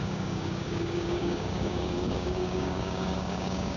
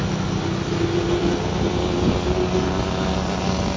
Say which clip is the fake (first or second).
first